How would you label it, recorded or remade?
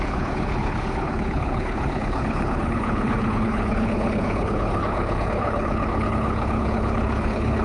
remade